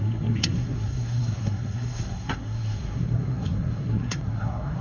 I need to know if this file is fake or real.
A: fake